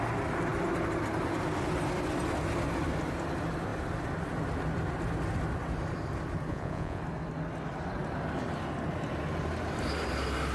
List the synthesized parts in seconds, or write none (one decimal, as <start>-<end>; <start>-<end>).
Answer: 6.5-7.0